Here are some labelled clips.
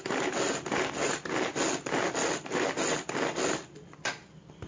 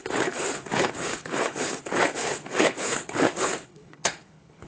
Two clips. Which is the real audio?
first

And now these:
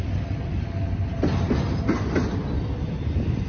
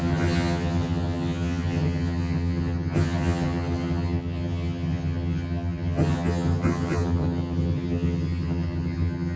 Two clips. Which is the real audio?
first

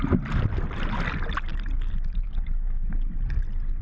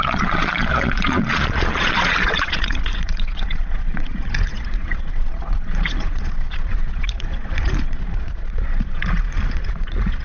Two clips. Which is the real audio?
first